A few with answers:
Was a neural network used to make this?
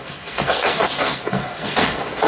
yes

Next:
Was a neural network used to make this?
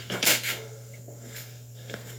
yes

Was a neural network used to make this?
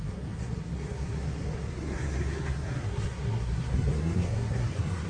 yes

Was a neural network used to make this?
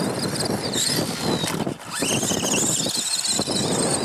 no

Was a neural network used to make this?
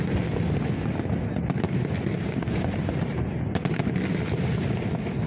no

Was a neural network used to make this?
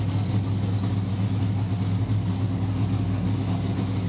no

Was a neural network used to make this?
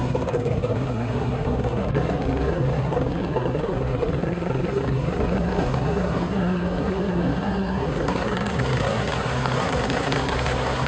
yes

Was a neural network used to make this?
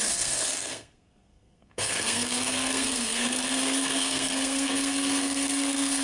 yes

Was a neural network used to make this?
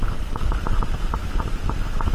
no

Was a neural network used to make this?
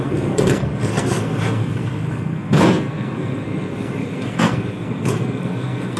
yes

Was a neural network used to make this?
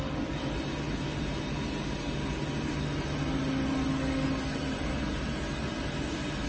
no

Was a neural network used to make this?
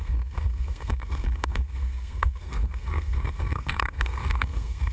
yes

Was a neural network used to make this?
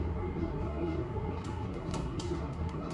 yes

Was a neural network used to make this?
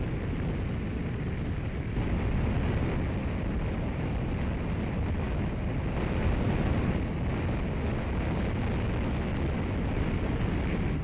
no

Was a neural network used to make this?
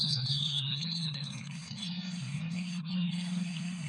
yes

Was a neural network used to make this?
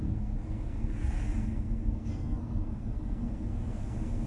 yes